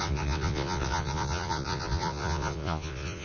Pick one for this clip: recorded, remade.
remade